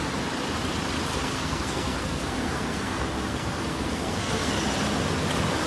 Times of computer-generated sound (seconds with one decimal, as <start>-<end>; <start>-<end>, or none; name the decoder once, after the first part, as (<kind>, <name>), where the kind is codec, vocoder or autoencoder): 1.1-4.5 (codec, SNAC)